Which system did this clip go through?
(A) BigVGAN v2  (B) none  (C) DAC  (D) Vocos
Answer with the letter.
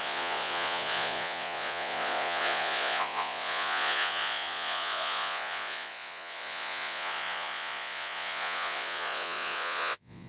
D